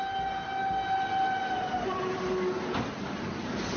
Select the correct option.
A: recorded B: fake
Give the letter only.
A